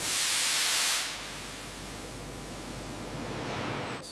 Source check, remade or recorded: recorded